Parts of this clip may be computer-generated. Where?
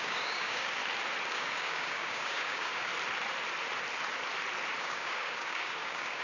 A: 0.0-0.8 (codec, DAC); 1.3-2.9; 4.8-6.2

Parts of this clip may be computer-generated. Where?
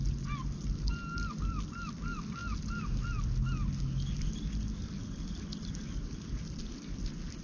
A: none